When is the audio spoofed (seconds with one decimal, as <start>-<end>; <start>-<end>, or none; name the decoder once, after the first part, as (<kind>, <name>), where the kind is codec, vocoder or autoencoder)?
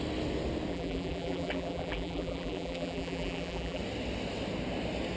0.7-3.8 (vocoder, BigVGAN v2)